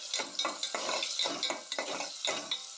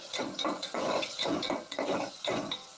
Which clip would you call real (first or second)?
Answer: first